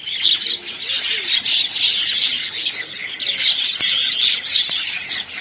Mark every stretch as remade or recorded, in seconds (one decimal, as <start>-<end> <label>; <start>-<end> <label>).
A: 0.0-2.4 recorded; 2.4-3.2 remade; 3.2-5.4 recorded